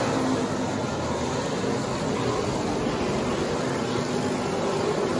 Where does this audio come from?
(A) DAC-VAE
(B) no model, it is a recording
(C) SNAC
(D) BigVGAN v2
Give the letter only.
B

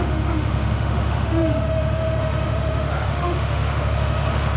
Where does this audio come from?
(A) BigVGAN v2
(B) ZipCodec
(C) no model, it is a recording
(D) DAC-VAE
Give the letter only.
D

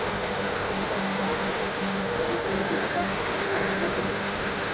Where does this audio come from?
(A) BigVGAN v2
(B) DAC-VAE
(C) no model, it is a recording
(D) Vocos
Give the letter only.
B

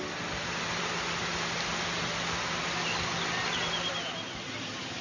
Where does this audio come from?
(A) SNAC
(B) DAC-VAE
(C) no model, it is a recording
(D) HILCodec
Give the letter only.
C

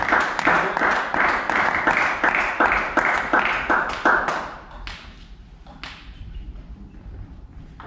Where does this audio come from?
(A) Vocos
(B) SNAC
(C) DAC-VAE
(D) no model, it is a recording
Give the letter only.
D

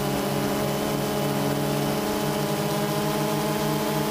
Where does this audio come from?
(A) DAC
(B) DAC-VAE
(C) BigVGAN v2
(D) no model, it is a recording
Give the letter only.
D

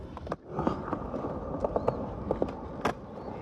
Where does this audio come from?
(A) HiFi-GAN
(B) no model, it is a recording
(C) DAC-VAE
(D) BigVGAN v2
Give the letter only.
B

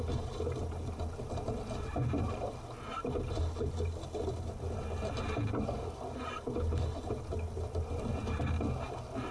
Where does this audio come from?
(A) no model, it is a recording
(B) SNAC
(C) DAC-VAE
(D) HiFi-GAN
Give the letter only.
A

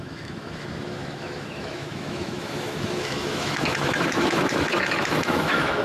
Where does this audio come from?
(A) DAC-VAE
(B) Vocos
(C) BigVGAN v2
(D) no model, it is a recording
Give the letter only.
A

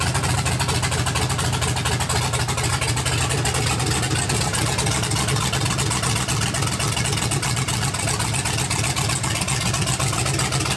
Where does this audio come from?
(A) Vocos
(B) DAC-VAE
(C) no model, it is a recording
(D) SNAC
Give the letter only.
C